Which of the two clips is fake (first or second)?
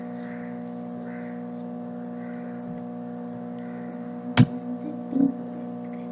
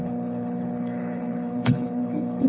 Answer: second